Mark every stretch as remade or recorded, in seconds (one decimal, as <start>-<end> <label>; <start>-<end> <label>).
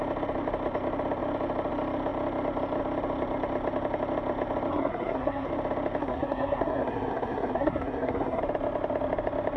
0.0-4.7 recorded; 4.7-5.5 remade; 5.5-6.0 recorded; 6.0-8.4 remade; 8.4-9.6 recorded